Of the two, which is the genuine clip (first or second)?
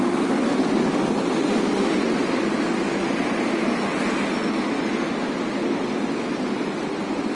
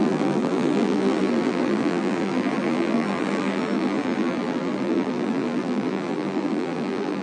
first